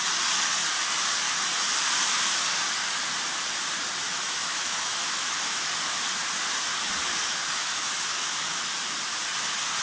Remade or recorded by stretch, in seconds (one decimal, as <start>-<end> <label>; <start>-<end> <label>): 0.0-4.0 recorded; 4.0-5.7 remade; 5.7-7.6 recorded; 7.6-8.7 remade; 8.7-9.8 recorded